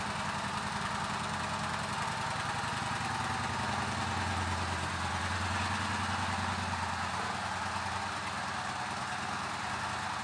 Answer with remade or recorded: recorded